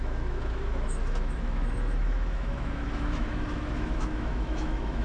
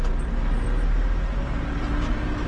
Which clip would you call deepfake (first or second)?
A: first